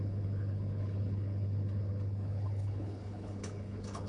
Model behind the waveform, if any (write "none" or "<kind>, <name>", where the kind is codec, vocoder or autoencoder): codec, HILCodec